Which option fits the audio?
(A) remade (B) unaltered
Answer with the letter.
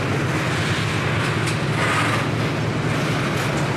B